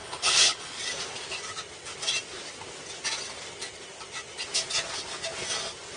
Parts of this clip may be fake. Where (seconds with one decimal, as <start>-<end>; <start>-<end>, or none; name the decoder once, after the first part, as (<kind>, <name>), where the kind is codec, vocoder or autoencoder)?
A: 0.0-0.8 (codec, HILCodec)